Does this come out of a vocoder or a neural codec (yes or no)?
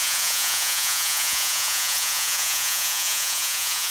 yes